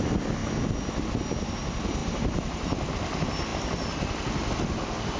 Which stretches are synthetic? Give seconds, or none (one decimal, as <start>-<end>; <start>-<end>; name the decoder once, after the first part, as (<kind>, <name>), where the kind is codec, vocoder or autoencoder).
none